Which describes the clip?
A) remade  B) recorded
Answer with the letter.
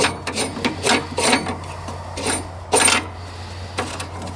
B